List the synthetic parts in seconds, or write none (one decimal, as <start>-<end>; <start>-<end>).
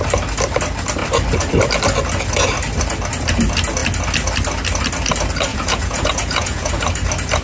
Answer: 5.5-6.7